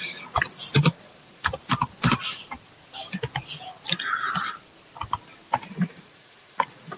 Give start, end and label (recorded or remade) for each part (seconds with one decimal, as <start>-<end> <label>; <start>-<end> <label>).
0.0-1.5 remade; 1.5-5.7 recorded; 5.7-7.0 remade